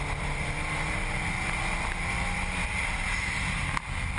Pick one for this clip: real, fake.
real